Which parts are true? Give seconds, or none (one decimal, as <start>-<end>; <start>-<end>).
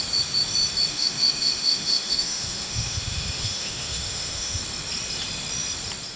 0.0-0.9; 4.6-6.2